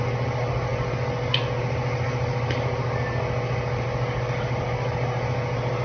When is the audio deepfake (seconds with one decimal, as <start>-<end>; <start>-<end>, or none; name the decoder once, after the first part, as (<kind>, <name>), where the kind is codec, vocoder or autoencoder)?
none